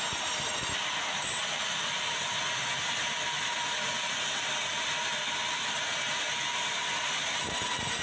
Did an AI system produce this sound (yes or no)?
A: no